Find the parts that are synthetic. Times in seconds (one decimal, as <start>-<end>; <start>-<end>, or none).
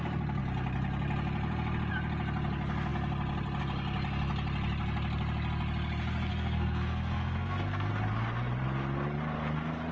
6.3-7.9